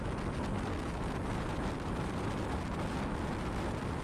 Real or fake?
real